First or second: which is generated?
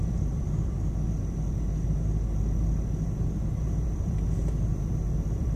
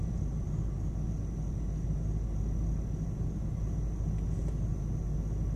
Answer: first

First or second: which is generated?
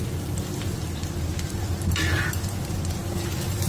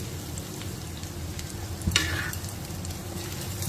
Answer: second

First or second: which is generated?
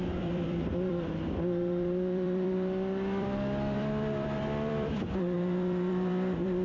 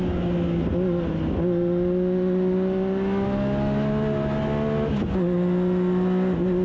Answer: first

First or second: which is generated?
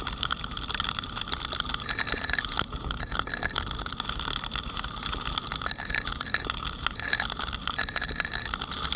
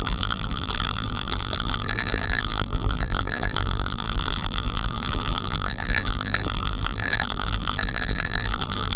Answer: second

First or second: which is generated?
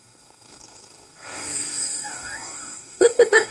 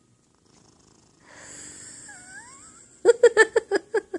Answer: first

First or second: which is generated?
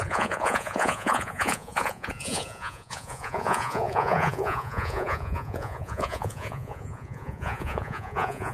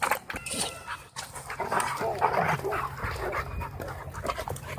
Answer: first